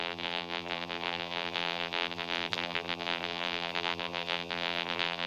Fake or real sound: fake